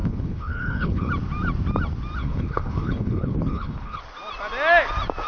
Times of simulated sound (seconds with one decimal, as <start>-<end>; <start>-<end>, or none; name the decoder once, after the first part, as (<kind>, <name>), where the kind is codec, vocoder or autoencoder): 0.0-1.1 (codec, HILCodec); 2.2-4.0